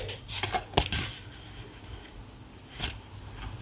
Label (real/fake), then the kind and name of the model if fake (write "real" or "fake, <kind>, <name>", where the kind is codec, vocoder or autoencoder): real